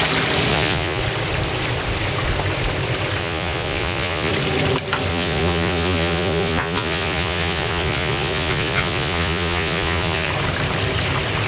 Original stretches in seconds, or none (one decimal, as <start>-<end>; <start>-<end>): 0.0-0.5; 1.0-3.2; 4.3-5.1; 10.3-11.5